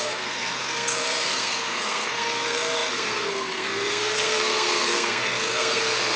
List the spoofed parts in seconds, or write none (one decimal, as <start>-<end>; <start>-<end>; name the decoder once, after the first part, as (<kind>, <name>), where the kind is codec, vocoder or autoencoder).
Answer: 0.0-6.2 (codec, SNAC)